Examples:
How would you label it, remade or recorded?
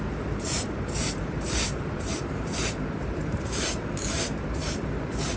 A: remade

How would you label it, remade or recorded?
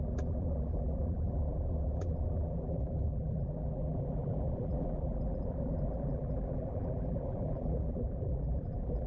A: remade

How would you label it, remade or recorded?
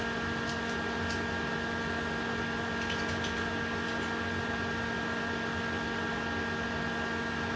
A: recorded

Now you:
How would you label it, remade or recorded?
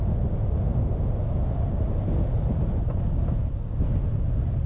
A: recorded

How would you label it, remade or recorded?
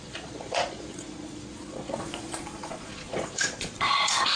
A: remade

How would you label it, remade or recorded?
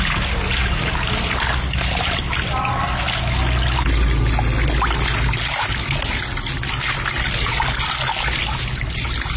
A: recorded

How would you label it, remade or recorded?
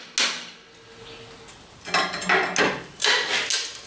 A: recorded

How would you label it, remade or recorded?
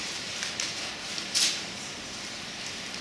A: remade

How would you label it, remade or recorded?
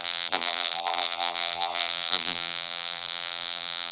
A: remade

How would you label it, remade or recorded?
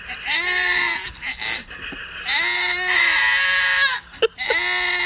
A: recorded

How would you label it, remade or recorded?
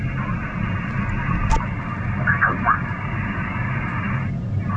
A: recorded